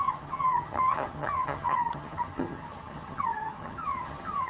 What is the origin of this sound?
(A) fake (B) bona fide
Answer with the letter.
A